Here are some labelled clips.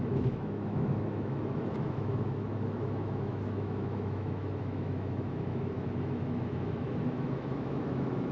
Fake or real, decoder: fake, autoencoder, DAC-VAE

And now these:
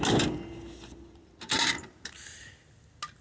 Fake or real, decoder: real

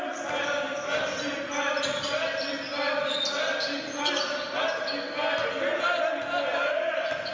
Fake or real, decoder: real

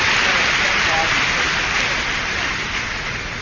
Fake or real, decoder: real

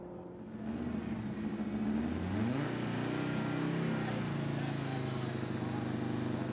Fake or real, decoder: real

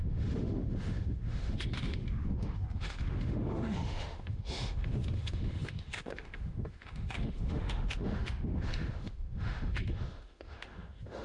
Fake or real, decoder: fake, autoencoder, DAC-VAE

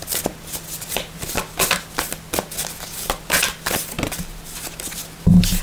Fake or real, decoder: real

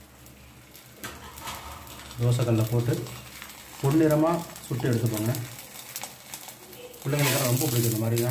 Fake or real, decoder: real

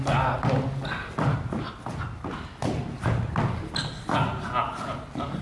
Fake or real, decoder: real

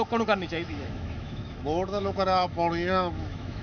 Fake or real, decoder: fake, autoencoder, DAC-VAE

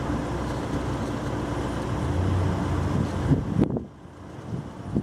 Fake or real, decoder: real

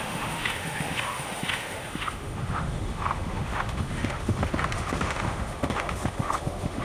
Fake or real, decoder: fake, autoencoder, DAC-VAE